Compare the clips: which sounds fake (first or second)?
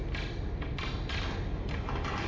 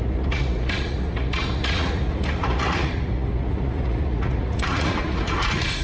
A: second